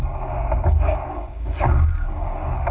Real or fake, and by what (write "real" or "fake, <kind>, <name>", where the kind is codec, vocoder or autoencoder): fake, codec, DAC